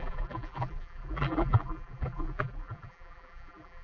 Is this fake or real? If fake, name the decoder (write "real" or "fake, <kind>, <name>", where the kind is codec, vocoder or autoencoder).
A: fake, vocoder, BigVGAN v2